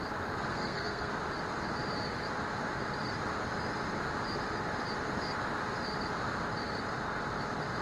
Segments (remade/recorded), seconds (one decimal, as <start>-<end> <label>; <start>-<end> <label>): 0.0-0.5 recorded; 0.5-1.1 remade; 1.1-7.8 recorded